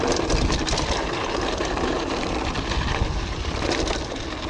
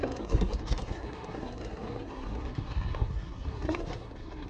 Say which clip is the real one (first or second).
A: first